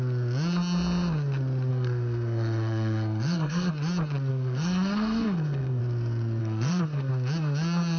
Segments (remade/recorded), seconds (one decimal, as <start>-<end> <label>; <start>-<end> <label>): 0.0-1.7 recorded; 1.7-3.7 remade; 3.7-4.3 recorded; 4.3-5.8 remade; 5.8-6.4 recorded; 6.4-7.1 remade; 7.1-8.0 recorded